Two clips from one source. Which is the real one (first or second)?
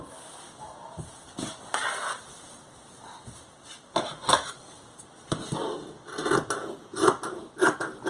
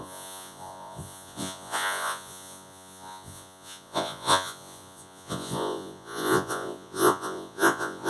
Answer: first